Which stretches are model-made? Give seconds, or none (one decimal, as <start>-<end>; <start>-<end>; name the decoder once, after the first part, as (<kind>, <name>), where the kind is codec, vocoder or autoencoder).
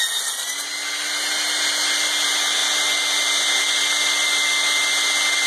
none